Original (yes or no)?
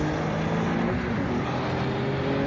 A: yes